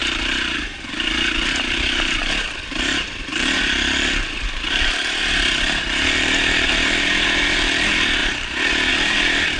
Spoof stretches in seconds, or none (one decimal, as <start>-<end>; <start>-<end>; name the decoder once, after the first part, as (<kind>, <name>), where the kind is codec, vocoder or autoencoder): 0.0-9.6 (vocoder, BigVGAN v2)